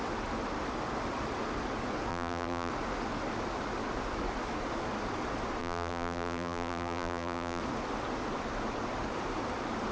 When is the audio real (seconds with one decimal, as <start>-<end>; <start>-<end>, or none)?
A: 0.0-2.1; 2.7-5.6; 7.6-9.9